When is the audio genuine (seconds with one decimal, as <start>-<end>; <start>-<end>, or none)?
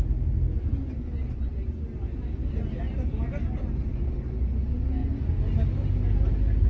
0.0-6.7